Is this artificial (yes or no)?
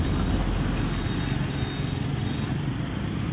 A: no